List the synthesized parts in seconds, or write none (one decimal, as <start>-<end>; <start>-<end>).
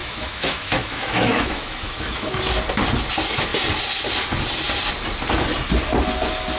0.0-2.3